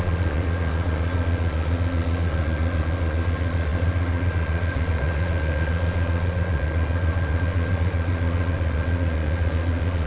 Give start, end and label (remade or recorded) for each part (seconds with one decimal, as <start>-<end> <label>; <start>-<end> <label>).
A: 0.0-10.1 remade